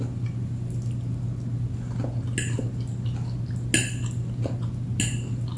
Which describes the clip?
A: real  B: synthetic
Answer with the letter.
A